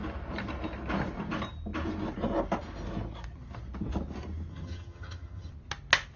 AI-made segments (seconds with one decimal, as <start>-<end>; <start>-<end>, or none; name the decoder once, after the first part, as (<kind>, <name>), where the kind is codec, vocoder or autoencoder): 4.5-5.5 (vocoder, HiFi-GAN)